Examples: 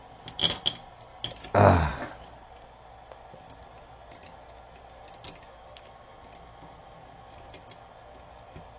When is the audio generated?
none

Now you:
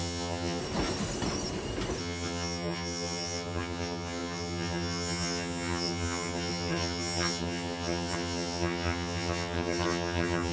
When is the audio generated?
0.0-0.6 (vocoder, HiFi-GAN); 2.0-10.5